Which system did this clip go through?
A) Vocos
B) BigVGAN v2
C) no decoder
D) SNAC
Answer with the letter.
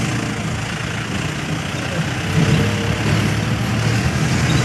C